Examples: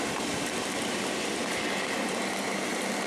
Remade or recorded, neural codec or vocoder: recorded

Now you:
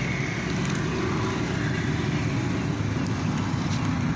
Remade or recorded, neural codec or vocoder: recorded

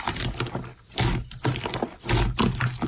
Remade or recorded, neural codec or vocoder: recorded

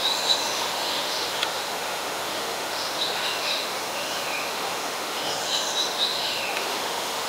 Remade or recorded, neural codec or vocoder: remade, autoencoder, DAC-VAE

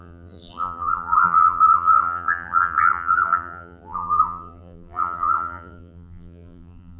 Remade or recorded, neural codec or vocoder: remade, vocoder, BigVGAN v2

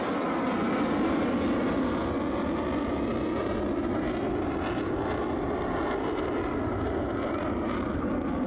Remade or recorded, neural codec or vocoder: recorded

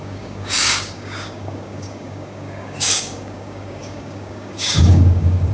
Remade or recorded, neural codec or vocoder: remade, codec, DAC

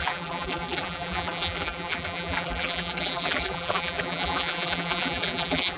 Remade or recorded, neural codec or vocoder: remade, vocoder, BigVGAN v2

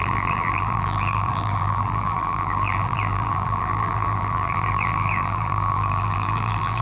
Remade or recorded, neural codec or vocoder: remade, vocoder, BigVGAN v2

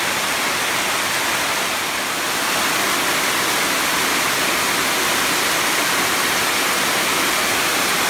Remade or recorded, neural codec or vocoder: recorded